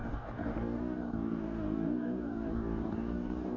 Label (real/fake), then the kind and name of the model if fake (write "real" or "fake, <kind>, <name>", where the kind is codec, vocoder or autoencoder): fake, codec, DAC